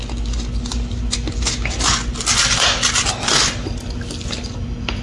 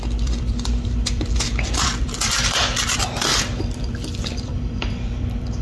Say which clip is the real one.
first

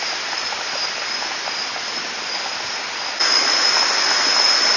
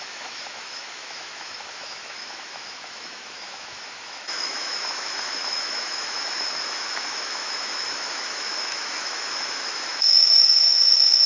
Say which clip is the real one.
first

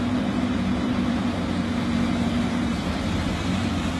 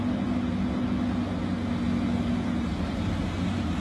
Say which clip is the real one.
second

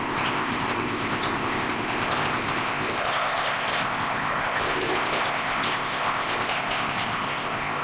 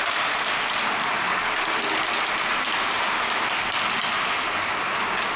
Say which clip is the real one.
second